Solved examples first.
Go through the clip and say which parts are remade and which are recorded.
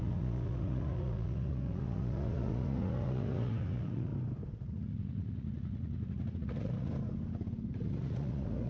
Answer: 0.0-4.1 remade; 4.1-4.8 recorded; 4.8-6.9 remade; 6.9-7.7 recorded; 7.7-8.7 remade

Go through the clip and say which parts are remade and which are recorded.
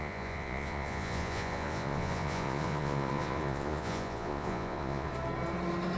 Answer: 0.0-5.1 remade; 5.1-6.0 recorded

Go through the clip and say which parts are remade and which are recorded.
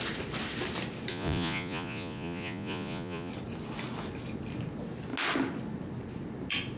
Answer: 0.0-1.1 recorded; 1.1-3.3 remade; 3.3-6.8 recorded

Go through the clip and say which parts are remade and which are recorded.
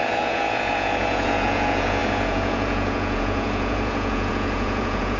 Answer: 0.0-5.2 remade